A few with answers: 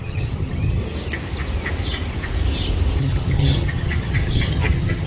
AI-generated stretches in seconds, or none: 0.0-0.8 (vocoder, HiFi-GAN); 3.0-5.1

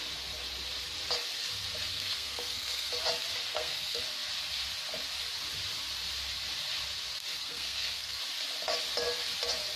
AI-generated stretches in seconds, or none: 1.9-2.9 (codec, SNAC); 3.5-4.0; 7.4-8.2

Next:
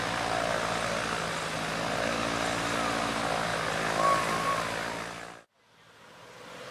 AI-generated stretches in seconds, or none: none

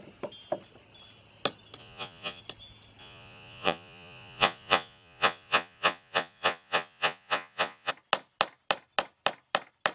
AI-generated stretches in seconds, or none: 1.8-2.4 (vocoder, Vocos); 3.0-7.9